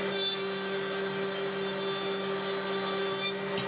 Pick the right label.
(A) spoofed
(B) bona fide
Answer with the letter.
B